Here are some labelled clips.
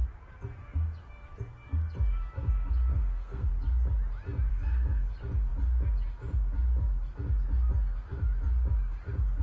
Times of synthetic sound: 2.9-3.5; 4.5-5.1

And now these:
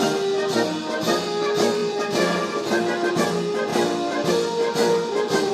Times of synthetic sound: 1.8-3.1; 3.7-4.3; 4.8-5.5

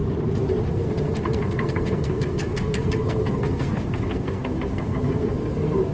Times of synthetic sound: 0.7-5.9

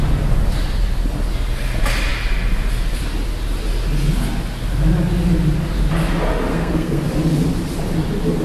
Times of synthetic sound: 6.5-7.0

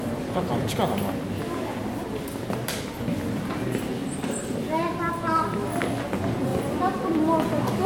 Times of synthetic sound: none